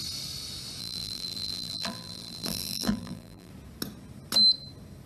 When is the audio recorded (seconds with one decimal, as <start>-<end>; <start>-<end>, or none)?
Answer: 0.0-0.8; 3.5-5.1